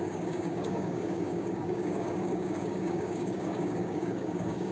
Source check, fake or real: fake